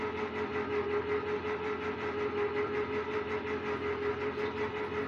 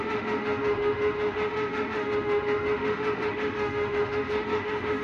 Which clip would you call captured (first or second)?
first